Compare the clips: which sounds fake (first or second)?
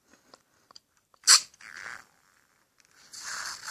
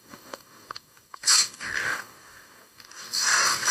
second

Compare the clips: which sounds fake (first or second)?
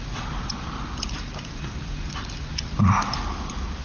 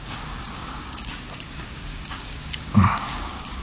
second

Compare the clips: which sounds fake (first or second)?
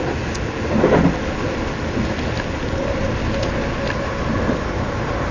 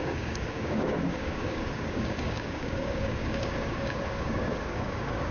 second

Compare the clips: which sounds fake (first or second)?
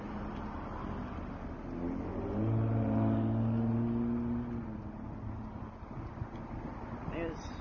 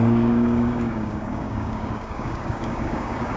second